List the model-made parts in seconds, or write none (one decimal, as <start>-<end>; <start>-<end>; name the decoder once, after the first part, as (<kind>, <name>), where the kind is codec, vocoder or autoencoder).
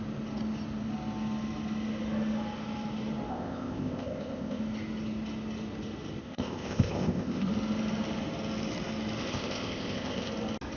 3.3-4.6 (codec, ZipCodec); 6.2-7.5; 9.2-10.3